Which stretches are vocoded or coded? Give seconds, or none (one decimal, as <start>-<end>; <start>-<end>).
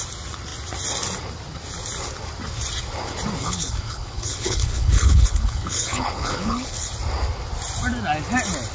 3.4-6.9